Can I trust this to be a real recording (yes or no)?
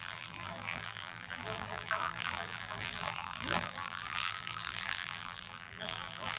no